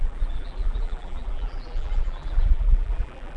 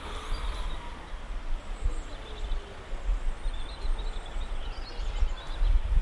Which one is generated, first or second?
first